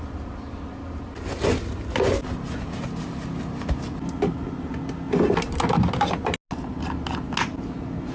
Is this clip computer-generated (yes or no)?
no